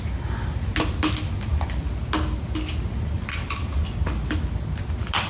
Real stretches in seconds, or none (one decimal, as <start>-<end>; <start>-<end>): 0.0-5.3